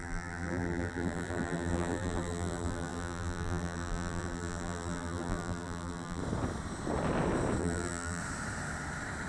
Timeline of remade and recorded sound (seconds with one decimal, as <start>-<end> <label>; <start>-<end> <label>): 0.0-6.2 remade; 6.2-7.6 recorded; 7.6-8.2 remade; 8.2-9.3 recorded